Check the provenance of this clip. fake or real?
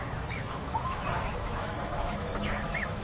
fake